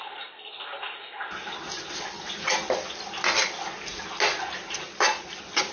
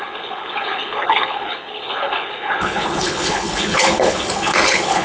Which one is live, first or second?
first